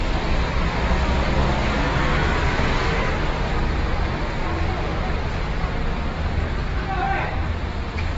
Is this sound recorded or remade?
recorded